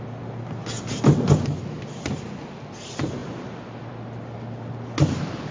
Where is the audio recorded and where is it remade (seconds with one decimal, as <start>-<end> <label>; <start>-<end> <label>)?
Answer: 0.0-5.5 recorded